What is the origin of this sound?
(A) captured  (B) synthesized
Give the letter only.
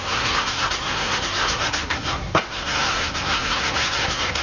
B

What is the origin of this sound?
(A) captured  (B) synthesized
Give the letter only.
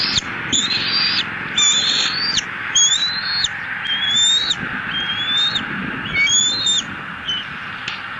A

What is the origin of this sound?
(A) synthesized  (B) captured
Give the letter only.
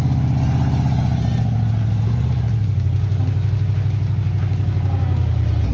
B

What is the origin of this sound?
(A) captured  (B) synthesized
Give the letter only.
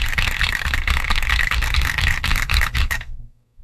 B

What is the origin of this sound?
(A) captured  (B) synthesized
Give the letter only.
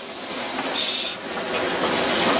A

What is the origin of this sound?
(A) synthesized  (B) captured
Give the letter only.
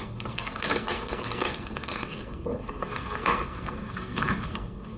A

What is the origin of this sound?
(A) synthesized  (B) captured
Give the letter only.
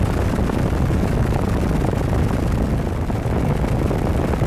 B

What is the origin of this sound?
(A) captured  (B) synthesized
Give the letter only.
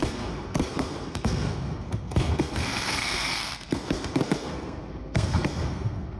B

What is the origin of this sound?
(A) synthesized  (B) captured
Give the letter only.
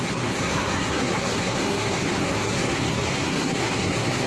A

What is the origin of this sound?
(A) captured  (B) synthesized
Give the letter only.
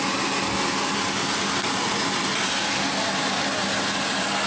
A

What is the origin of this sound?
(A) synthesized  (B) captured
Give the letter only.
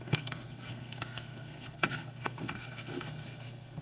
A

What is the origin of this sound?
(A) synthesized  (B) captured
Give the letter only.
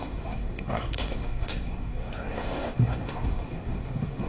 A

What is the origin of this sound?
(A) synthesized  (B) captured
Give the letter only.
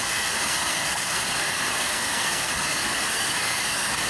A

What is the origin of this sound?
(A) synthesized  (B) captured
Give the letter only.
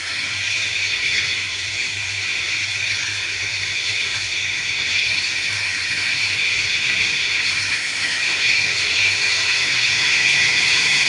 A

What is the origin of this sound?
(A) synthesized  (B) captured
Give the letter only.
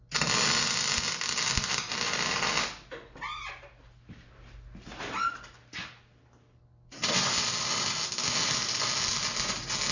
B